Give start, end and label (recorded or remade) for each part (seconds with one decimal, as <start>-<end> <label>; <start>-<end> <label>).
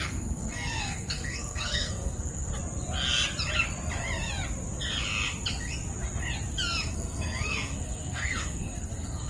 0.0-2.5 remade; 2.5-6.9 recorded; 6.9-9.3 remade